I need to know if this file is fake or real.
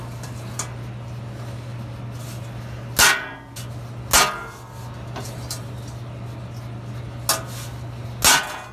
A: real